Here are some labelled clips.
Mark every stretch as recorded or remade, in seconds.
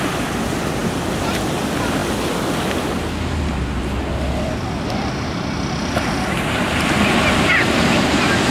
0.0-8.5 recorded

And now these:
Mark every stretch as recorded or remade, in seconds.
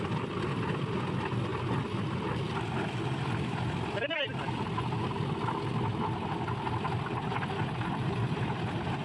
0.0-9.0 recorded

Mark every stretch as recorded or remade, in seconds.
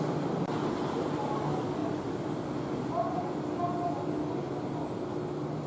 0.0-5.7 recorded